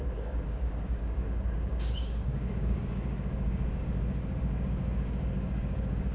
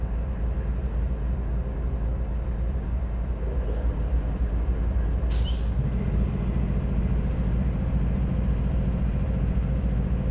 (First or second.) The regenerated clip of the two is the first